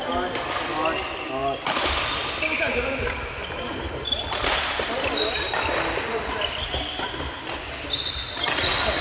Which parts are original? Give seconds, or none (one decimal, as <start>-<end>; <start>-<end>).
0.0-9.0